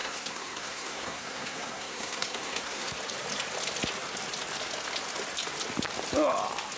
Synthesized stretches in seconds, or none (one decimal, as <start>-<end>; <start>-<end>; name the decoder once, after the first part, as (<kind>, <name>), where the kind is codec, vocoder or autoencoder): 0.0-2.9 (codec, SNAC)